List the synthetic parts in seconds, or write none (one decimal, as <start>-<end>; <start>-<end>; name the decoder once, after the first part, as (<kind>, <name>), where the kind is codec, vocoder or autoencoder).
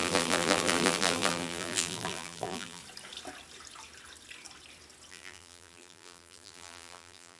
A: 0.0-2.8 (vocoder, BigVGAN v2); 5.1-7.4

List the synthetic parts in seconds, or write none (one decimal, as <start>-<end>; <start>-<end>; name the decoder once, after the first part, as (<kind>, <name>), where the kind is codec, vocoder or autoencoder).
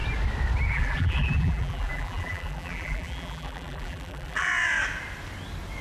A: 0.7-4.5 (vocoder, BigVGAN v2)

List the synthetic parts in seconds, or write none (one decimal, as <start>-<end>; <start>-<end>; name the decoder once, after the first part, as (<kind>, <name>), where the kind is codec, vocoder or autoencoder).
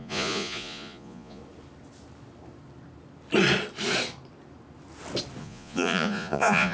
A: 0.0-1.4 (vocoder, Vocos); 5.4-6.7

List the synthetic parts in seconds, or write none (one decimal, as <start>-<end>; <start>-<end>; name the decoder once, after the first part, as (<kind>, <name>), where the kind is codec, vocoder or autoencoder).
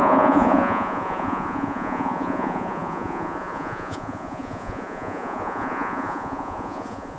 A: 0.0-7.2 (vocoder, Vocos)